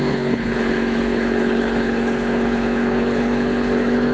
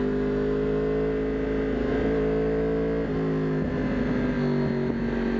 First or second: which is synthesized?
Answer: first